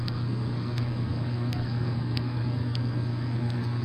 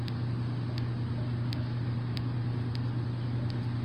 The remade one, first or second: first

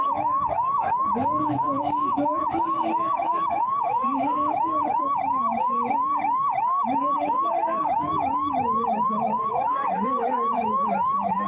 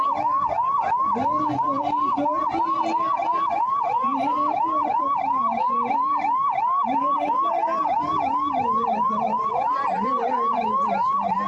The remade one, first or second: first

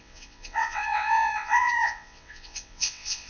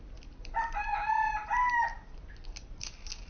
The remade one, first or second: first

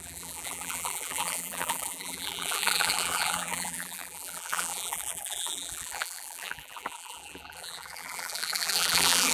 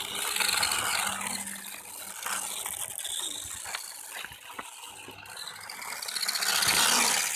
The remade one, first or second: first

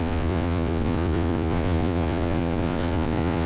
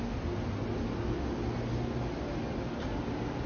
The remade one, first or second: first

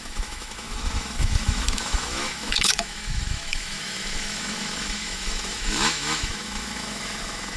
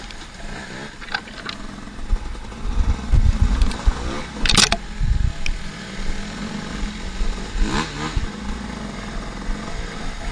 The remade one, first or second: first